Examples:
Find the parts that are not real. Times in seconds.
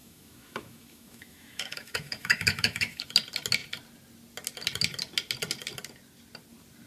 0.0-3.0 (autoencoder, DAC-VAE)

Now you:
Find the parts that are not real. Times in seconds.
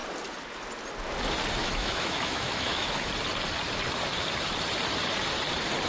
1.6-3.1 (autoencoder, DAC-VAE)